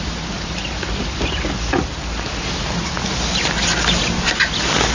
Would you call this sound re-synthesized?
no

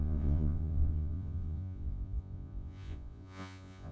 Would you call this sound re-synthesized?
yes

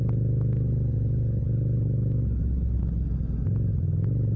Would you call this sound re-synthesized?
no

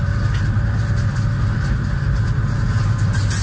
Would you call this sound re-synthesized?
no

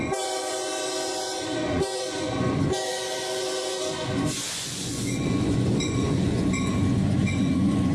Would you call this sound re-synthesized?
yes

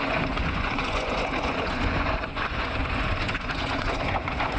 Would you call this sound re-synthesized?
yes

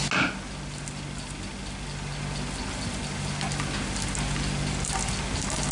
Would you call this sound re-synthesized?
no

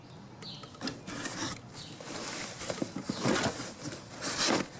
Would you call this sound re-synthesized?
no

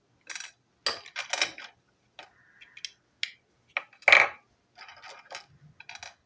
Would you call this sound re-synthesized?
no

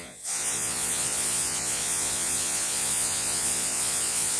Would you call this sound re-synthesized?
yes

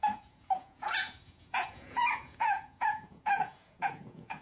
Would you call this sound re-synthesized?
yes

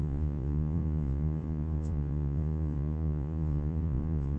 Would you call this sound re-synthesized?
yes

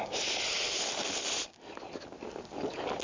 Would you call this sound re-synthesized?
no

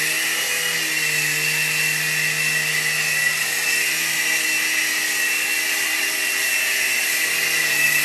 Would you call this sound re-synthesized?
no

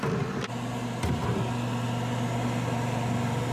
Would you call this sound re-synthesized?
no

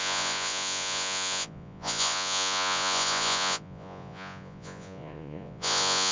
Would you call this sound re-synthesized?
yes